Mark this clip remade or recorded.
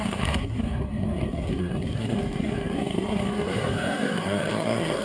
remade